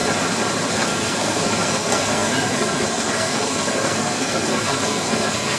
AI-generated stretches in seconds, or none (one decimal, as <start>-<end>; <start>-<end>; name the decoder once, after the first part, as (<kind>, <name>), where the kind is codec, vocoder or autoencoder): 0.7-5.6 (codec, SNAC)